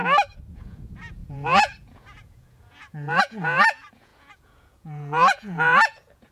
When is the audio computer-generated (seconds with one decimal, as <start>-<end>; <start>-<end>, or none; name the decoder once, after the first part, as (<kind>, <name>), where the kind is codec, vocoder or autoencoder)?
0.5-6.3 (vocoder, Vocos)